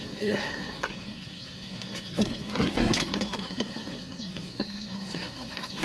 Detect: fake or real fake